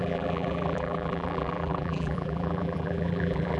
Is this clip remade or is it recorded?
remade